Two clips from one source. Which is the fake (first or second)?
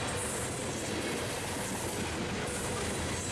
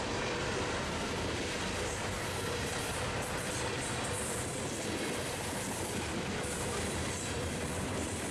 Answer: second